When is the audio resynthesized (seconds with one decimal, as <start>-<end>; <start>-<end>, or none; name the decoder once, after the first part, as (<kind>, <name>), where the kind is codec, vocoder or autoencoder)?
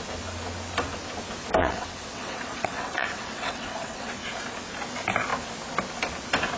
1.6-4.1 (vocoder, WaveNeXt)